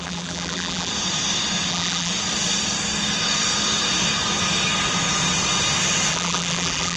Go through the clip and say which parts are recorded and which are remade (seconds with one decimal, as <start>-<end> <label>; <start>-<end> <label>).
0.0-0.9 remade; 0.9-1.7 recorded; 1.7-2.1 remade; 2.1-6.1 recorded; 6.1-7.0 remade